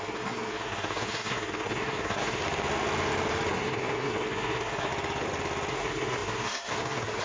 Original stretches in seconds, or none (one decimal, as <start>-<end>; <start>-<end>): 2.4-3.5; 4.9-5.7